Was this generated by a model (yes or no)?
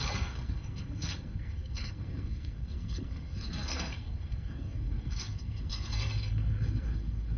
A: yes